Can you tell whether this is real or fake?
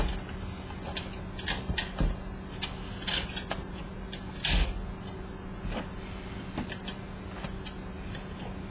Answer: real